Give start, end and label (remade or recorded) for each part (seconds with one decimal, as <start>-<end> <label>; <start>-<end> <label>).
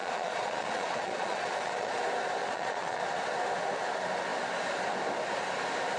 0.0-2.0 remade; 2.0-2.4 recorded; 2.4-3.0 remade; 3.0-6.0 recorded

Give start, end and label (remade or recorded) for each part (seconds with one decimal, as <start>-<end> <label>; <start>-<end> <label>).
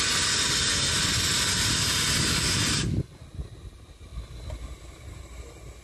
0.0-5.8 recorded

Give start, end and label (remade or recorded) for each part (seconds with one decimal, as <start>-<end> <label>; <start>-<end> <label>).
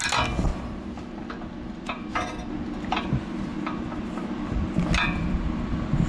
0.0-6.1 recorded